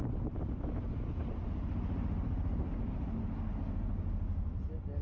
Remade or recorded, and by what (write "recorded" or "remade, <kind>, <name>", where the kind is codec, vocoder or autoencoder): recorded